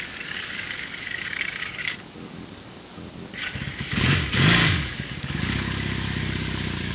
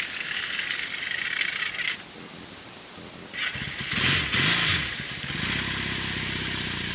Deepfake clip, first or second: first